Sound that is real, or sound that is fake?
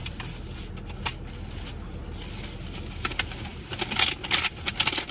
real